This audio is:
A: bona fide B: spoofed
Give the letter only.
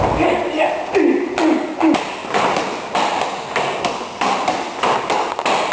A